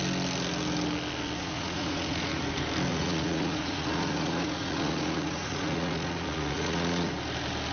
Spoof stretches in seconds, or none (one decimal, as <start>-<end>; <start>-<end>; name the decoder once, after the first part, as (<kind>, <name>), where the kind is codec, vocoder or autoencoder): 1.4-2.4 (vocoder, Vocos); 2.9-7.1